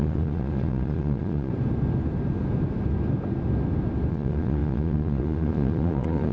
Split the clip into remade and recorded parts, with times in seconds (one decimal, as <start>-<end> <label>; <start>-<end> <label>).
0.0-1.5 remade; 1.5-4.1 recorded; 4.1-6.3 remade